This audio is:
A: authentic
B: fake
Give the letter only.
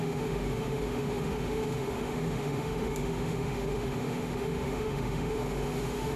B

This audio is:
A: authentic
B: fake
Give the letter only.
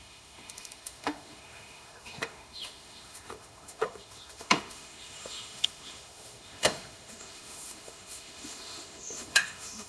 B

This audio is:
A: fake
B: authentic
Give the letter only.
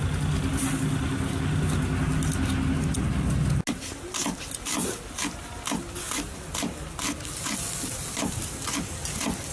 B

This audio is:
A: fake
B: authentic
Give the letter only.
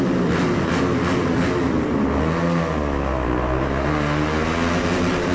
B